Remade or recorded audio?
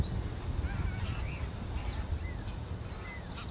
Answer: recorded